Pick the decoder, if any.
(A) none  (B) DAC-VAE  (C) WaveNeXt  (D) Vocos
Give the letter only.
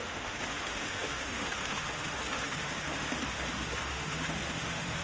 B